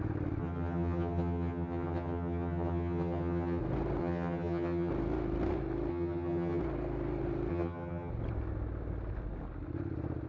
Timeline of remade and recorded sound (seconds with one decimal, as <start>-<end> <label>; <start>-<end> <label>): 0.0-0.4 recorded; 0.4-3.6 remade; 3.6-4.0 recorded; 4.0-4.9 remade; 4.9-5.9 recorded; 5.9-6.6 remade; 6.6-7.5 recorded; 7.5-8.1 remade; 8.1-10.3 recorded